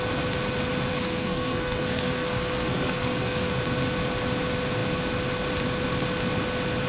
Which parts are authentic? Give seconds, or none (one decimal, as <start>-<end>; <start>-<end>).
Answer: 0.0-0.9; 3.5-6.9